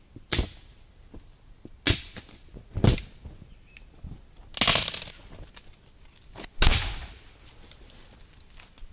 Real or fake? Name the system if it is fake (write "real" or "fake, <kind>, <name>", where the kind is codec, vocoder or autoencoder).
real